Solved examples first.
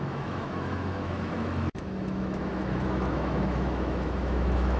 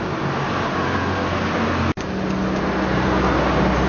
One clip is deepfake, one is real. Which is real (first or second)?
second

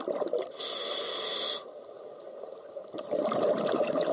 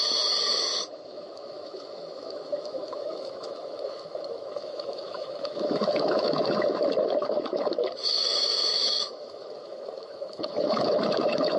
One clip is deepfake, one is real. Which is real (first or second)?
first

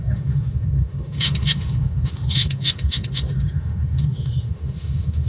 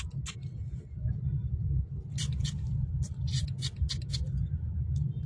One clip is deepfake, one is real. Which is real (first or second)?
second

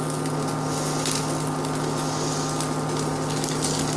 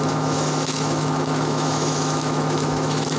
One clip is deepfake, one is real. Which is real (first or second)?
first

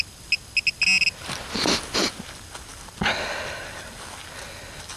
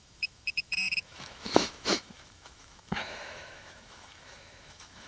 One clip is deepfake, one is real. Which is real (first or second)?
first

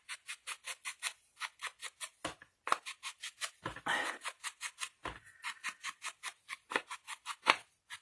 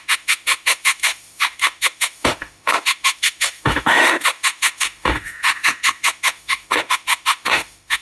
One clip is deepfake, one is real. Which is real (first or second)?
first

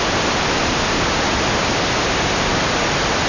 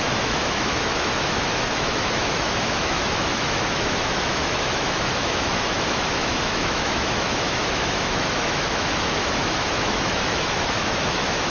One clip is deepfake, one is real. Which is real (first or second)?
first